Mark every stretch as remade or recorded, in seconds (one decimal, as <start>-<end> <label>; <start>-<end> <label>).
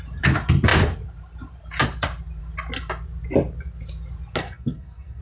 0.0-4.4 recorded; 4.4-5.2 remade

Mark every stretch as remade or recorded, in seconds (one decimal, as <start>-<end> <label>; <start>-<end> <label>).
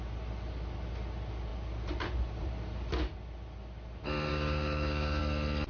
0.0-4.3 recorded; 4.3-5.2 remade; 5.2-5.7 recorded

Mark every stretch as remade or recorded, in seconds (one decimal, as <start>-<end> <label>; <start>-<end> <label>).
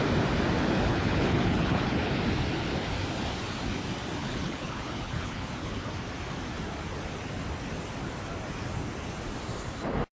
0.0-0.9 recorded; 0.9-2.1 remade; 2.1-4.2 recorded; 4.2-5.9 remade; 5.9-10.2 recorded